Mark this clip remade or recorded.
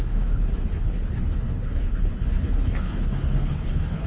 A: remade